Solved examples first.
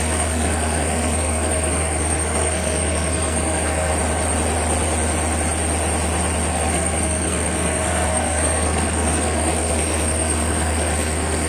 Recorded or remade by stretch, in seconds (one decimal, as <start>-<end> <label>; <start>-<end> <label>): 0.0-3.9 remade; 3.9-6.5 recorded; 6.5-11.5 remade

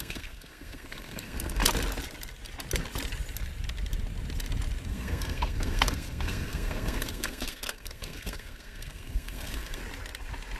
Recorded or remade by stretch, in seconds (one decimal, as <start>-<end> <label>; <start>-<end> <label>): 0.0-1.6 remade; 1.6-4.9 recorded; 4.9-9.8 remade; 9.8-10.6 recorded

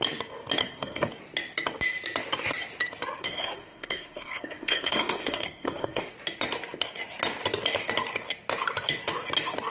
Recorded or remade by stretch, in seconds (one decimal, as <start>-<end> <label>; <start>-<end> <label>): 0.0-0.6 recorded; 0.6-1.1 remade; 1.1-3.2 recorded; 3.2-6.1 remade; 6.1-9.7 recorded

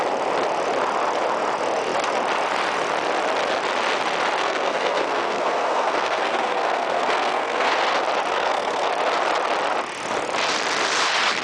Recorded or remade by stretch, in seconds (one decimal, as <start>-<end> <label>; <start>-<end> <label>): 0.0-4.4 recorded; 4.4-7.7 remade; 7.7-8.3 recorded; 8.3-8.9 remade; 8.9-11.4 recorded

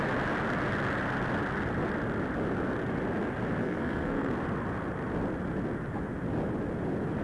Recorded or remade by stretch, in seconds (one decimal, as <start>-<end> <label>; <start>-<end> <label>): 0.0-3.6 recorded; 3.6-4.3 remade; 4.3-7.2 recorded

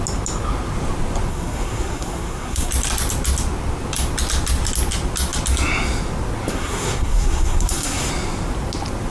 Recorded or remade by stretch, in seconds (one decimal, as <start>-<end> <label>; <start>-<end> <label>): 0.0-1.3 recorded; 1.3-2.7 remade; 2.7-6.5 recorded; 6.5-8.1 remade; 8.1-9.1 recorded

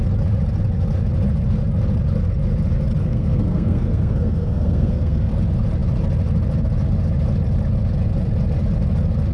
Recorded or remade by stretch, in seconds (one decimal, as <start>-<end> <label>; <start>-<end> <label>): 0.0-3.0 recorded; 3.0-5.3 remade; 5.3-9.3 recorded